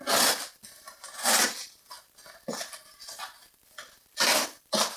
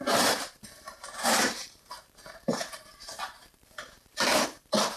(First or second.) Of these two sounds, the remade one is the second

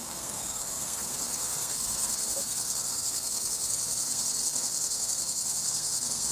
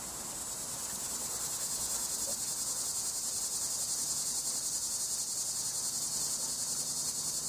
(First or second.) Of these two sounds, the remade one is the first